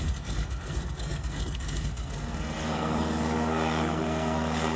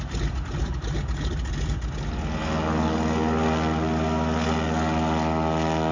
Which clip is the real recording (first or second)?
second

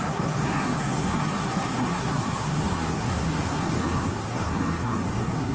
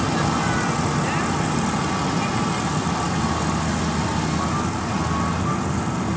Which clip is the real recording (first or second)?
second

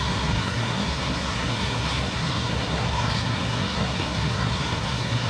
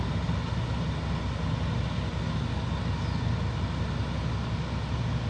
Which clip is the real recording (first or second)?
second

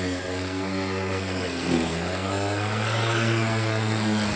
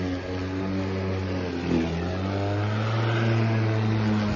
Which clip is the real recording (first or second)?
second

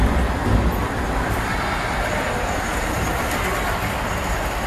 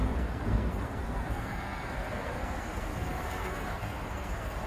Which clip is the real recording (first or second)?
first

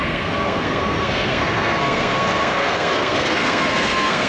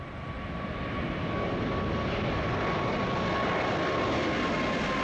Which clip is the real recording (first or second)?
second